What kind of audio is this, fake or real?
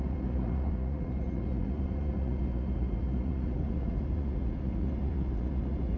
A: fake